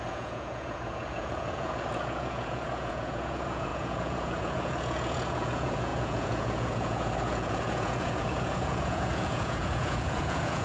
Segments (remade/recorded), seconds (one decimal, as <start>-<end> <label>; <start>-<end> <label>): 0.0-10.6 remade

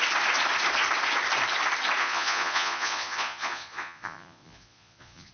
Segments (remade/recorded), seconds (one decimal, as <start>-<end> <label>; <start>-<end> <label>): 0.0-2.0 recorded; 2.0-5.3 remade

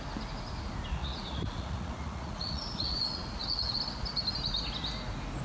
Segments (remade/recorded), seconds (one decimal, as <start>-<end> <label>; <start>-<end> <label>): 0.0-1.0 recorded; 1.0-3.8 remade; 3.8-5.4 recorded